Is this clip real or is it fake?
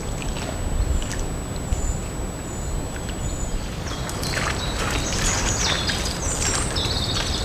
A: real